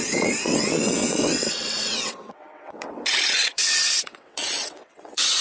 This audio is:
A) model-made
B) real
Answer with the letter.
A